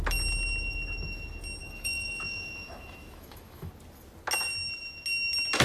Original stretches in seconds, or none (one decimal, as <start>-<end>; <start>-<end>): 0.0-1.6; 3.7-5.6